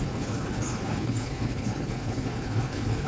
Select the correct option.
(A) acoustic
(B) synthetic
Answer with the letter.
B